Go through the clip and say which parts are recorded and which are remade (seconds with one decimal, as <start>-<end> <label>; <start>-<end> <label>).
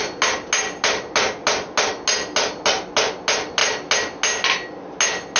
0.0-5.4 recorded